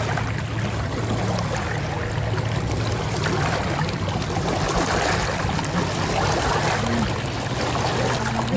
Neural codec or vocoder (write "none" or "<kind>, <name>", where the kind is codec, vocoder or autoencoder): none